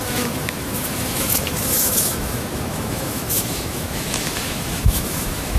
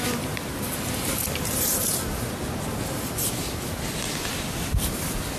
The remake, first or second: first